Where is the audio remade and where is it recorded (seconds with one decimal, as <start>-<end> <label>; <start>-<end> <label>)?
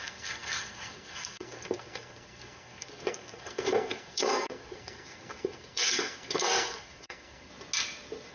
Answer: 0.0-7.5 remade; 7.5-8.3 recorded